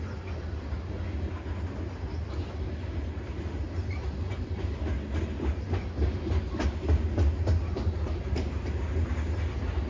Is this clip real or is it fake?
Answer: real